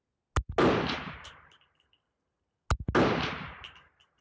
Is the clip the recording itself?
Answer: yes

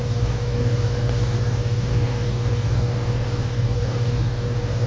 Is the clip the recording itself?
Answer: no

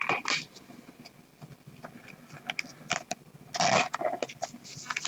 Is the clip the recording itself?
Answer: yes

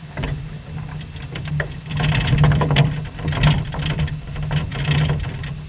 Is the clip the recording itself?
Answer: yes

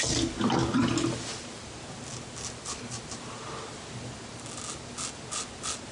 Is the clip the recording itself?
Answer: yes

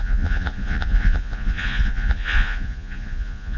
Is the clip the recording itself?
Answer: no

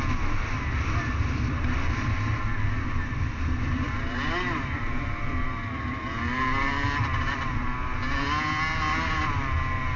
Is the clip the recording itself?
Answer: yes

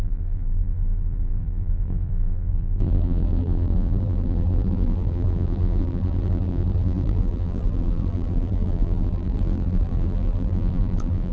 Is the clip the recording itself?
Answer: no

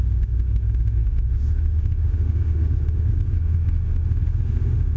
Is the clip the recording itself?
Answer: no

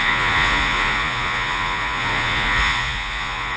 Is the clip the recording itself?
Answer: no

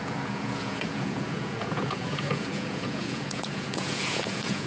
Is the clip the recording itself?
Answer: no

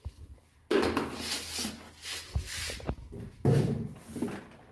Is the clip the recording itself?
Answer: yes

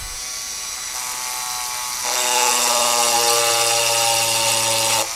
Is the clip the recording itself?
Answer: yes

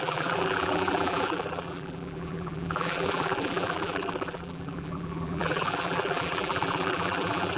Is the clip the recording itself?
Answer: no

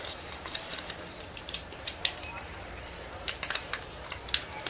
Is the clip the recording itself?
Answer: no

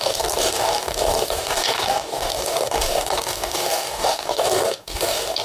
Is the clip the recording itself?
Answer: no